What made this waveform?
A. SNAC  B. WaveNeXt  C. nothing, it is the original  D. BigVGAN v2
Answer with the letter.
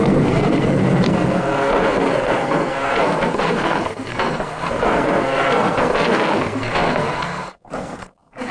A